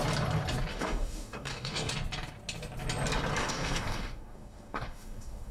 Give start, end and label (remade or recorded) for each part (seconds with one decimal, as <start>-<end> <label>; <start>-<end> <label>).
0.0-0.7 recorded; 0.7-1.9 remade; 1.9-3.4 recorded; 3.4-5.5 remade